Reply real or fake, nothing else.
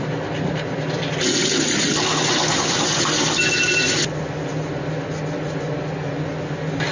real